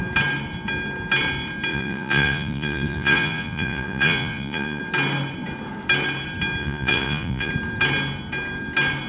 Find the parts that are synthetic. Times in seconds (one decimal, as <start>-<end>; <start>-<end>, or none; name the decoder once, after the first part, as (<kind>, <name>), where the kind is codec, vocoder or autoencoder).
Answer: 1.7-4.8 (vocoder, Vocos); 6.6-7.5